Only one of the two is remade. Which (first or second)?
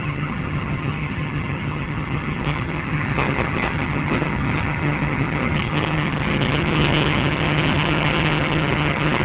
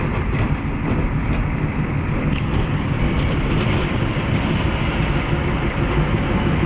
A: first